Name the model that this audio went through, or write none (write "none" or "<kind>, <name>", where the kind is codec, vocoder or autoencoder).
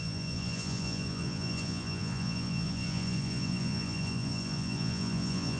vocoder, Vocos